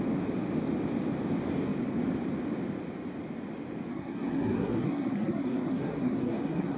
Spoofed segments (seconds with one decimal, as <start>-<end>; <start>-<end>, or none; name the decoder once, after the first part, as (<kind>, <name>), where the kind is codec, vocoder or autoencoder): 3.9-6.8 (codec, SNAC)